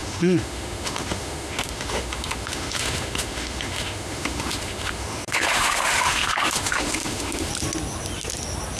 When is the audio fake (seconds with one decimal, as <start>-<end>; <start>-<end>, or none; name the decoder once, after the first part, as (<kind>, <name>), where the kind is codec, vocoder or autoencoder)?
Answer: 0.0-7.5 (autoencoder, DAC-VAE)